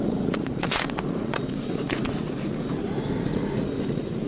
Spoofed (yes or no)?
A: yes